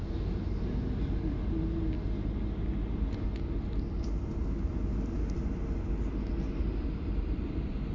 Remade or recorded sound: recorded